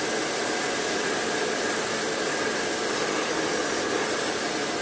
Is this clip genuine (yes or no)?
yes